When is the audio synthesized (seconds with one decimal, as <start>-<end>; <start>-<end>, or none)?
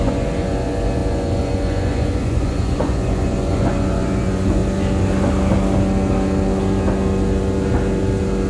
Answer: 0.0-4.6